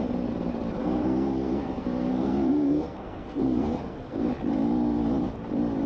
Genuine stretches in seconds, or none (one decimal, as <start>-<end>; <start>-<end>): 0.0-0.8; 4.3-5.9